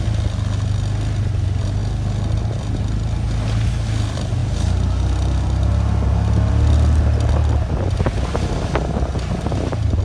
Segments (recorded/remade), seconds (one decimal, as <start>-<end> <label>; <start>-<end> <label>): 0.0-10.0 recorded